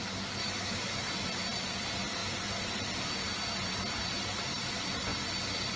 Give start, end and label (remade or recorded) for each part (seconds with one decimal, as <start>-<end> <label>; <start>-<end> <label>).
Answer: 0.0-0.4 recorded; 0.4-1.1 remade; 1.1-5.8 recorded